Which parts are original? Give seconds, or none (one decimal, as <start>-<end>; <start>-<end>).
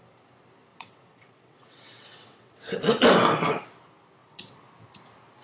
0.0-0.7; 3.0-4.2; 4.7-5.4